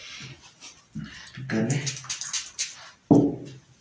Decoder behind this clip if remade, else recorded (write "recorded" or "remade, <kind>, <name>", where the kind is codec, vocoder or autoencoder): recorded